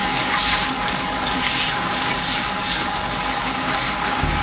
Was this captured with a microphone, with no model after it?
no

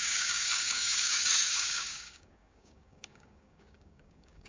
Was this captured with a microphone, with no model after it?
no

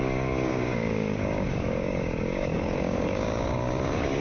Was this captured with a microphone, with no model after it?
no